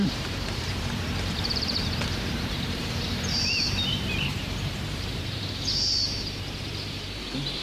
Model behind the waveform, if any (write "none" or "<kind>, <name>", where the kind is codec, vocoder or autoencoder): vocoder, BigVGAN v2